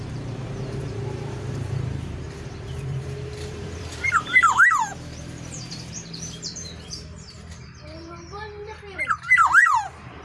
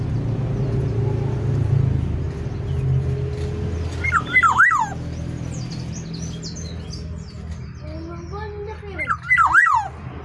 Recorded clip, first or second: second